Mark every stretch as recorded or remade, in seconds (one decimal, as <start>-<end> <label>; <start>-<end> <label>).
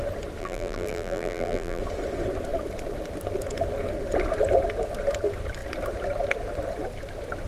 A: 0.0-0.4 recorded; 0.4-1.8 remade; 1.8-7.5 recorded